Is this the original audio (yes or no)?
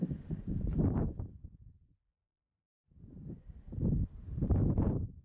no